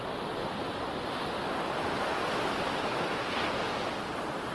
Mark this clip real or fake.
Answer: real